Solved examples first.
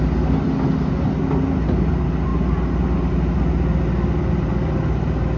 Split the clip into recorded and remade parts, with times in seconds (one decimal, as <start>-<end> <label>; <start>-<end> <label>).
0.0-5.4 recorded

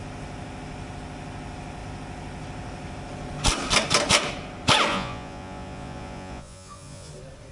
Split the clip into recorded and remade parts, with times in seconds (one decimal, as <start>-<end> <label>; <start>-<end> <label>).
0.0-4.9 recorded; 4.9-7.1 remade; 7.1-7.5 recorded

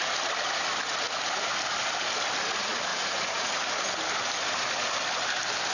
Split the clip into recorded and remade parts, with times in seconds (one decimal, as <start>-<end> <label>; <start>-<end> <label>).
0.0-2.9 recorded; 2.9-3.6 remade; 3.6-5.7 recorded